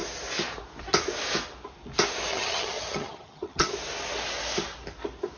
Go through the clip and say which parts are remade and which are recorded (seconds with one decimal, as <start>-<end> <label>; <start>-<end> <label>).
0.0-2.3 recorded; 2.3-3.7 remade; 3.7-5.4 recorded